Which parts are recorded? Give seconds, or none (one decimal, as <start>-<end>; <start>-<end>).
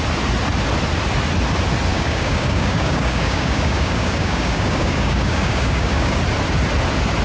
0.0-1.9; 6.2-7.2